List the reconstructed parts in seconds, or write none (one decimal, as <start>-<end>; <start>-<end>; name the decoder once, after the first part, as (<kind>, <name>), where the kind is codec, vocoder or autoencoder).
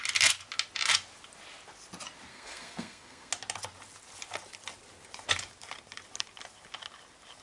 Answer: 2.3-3.3 (codec, SNAC)